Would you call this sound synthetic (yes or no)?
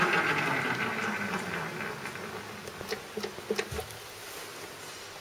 no